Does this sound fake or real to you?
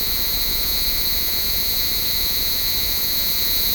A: fake